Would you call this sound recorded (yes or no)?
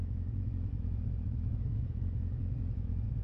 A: no